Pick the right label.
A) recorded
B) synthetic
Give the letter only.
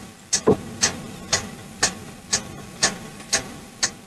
A